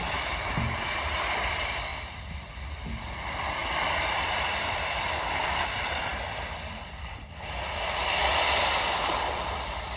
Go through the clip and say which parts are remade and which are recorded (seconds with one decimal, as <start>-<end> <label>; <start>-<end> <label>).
0.0-1.9 remade; 1.9-2.6 recorded; 2.6-10.0 remade